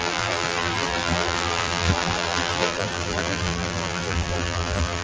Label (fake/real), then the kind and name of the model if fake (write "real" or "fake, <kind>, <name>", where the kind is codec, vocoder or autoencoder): fake, vocoder, BigVGAN v2